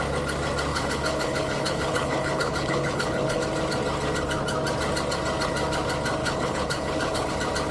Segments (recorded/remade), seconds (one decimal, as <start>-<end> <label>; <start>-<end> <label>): 0.0-0.7 recorded; 0.7-3.4 remade; 3.4-6.2 recorded; 6.2-7.3 remade; 7.3-7.7 recorded